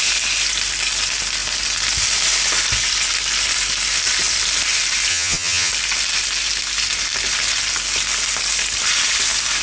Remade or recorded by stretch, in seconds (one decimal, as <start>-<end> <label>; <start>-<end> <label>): 0.0-5.1 recorded; 5.1-5.7 remade; 5.7-9.6 recorded